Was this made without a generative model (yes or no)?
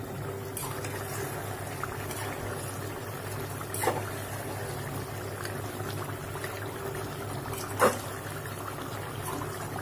yes